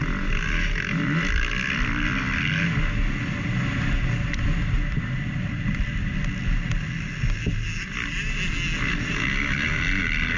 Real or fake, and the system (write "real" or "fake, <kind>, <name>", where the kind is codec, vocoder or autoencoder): real